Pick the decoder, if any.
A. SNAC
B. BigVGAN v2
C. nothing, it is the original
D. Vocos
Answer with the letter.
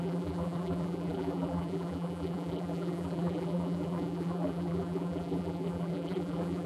B